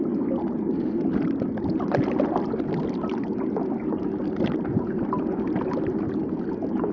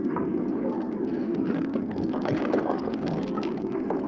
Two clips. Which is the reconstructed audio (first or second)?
second